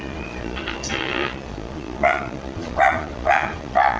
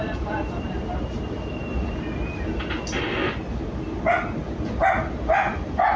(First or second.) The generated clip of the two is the first